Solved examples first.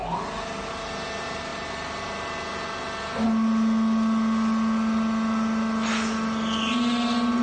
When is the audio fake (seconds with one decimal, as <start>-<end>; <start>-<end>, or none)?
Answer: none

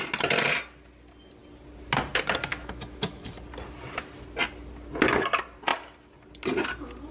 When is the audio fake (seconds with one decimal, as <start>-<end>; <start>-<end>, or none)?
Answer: 2.5-3.3

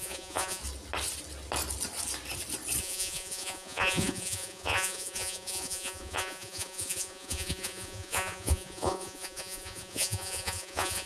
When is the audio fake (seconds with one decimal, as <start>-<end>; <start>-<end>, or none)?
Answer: 0.0-0.6; 2.8-11.1